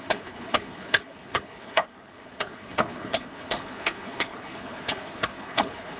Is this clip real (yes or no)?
no